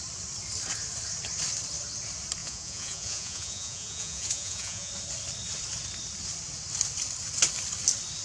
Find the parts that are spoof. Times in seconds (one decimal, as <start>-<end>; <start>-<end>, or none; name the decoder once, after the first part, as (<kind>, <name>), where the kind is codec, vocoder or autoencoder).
2.4-4.9 (vocoder, Vocos)